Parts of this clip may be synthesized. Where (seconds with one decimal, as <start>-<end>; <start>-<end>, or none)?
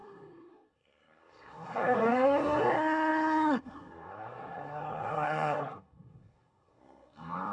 0.0-7.5